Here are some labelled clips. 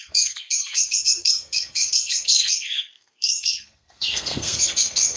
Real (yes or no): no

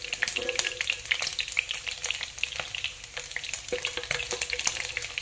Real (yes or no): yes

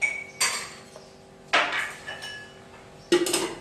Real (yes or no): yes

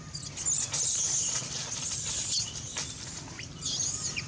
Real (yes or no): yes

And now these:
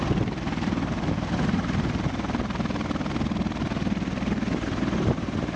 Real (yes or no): yes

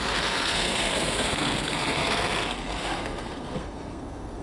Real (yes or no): no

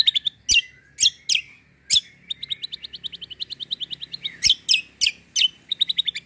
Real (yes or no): yes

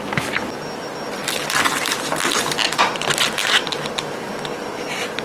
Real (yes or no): yes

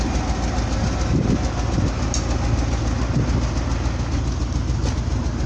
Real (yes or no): yes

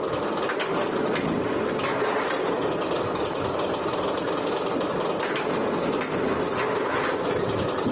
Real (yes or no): yes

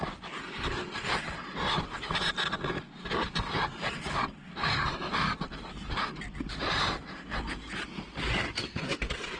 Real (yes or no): yes